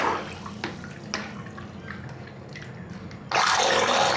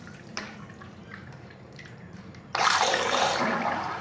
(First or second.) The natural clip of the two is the first